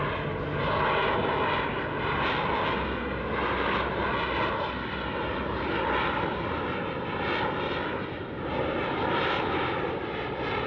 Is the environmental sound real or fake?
real